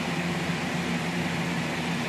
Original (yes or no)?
yes